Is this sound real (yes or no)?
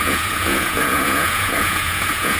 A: no